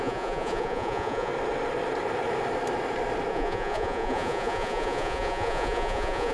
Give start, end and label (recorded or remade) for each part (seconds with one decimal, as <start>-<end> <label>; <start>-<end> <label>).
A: 0.0-1.3 remade; 1.3-3.3 recorded; 3.3-6.3 remade